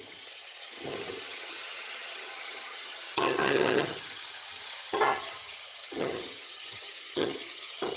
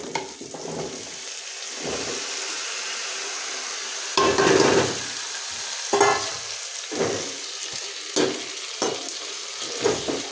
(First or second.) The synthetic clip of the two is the first